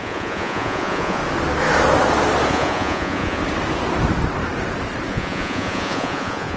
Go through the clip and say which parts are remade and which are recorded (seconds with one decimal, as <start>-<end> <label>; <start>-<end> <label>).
0.0-1.2 remade; 1.2-2.5 recorded; 2.5-3.4 remade; 3.4-5.1 recorded; 5.1-6.6 remade